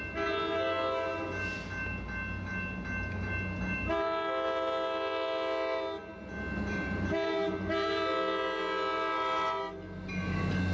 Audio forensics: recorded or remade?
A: recorded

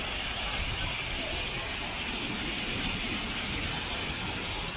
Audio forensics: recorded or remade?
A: recorded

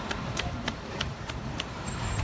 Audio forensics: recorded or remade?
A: remade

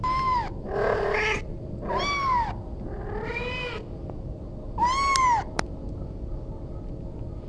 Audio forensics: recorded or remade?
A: recorded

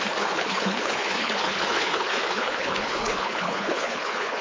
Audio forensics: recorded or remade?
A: remade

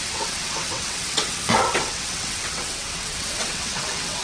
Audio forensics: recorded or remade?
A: remade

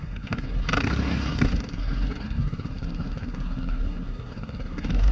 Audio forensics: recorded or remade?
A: remade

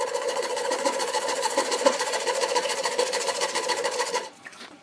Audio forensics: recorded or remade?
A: remade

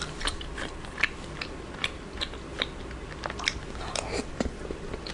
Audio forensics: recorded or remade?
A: recorded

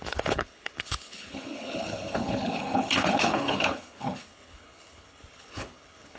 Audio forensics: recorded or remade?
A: remade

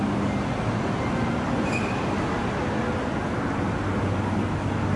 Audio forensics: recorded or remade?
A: recorded